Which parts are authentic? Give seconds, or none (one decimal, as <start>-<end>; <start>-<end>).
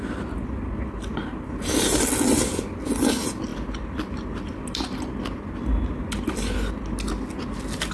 0.0-7.9